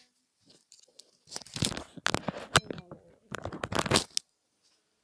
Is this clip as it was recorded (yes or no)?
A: yes